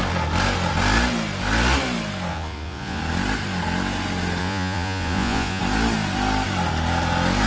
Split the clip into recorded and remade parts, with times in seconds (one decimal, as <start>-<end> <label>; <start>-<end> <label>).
0.0-2.3 recorded; 2.3-3.0 remade; 3.0-4.4 recorded; 4.4-5.6 remade; 5.6-7.5 recorded